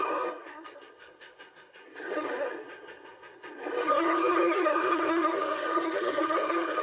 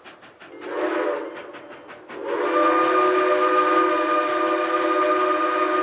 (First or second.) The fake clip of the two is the first